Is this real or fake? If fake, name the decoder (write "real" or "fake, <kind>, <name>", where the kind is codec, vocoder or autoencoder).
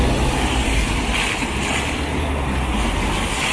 real